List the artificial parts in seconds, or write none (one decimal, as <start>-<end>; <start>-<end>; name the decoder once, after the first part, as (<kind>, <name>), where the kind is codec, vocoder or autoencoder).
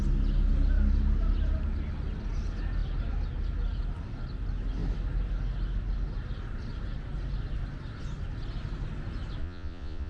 9.4-10.1 (vocoder, Vocos)